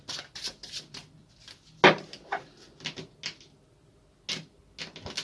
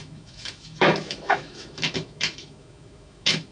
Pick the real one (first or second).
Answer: first